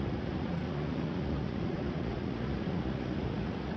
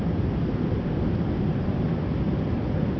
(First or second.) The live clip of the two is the second